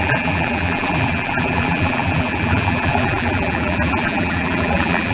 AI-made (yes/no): yes